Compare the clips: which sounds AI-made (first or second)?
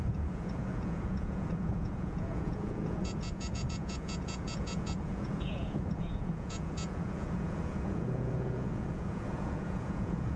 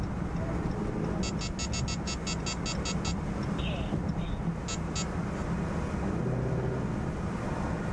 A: first